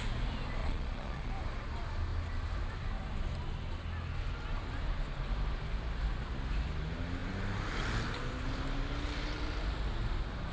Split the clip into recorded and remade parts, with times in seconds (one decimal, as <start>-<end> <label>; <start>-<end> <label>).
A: 0.0-0.6 recorded; 0.6-1.3 remade; 1.3-10.5 recorded